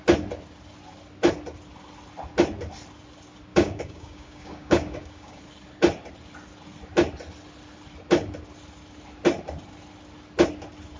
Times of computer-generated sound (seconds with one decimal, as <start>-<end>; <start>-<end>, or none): 3.5-5.4